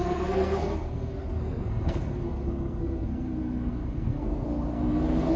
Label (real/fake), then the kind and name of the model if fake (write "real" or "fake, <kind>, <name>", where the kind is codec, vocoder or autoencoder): fake, codec, SNAC